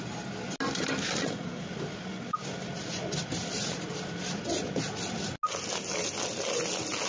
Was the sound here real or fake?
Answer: real